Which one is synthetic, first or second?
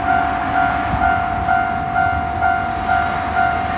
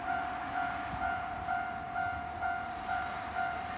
second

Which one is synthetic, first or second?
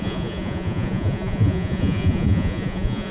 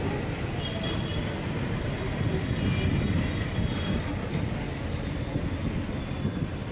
first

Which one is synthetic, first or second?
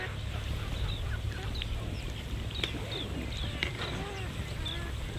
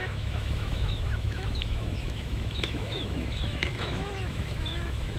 second